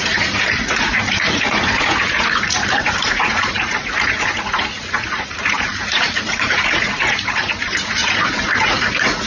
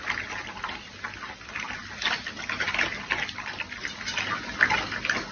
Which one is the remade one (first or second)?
first